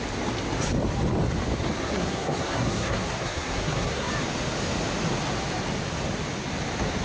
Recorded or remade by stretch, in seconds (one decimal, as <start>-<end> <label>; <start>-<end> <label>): 0.0-1.8 recorded; 1.8-4.1 remade; 4.1-7.0 recorded